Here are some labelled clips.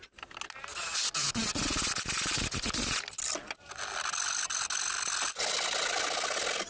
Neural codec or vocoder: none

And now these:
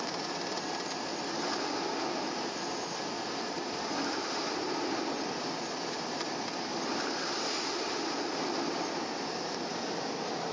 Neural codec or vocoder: none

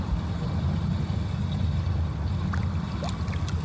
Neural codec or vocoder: none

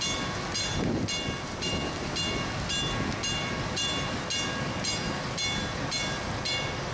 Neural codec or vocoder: none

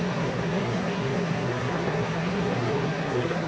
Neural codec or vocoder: codec, SNAC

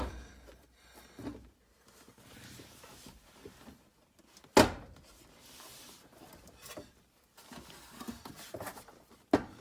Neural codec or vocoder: none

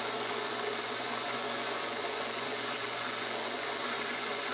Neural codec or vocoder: vocoder, Vocos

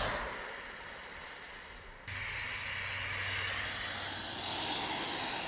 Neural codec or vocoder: none